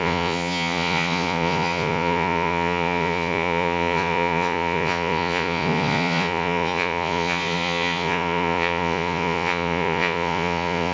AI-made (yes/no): yes